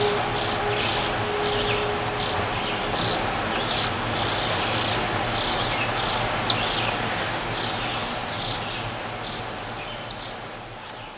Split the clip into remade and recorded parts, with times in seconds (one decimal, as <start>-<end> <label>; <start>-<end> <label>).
0.0-8.0 recorded; 8.0-8.6 remade; 8.6-11.2 recorded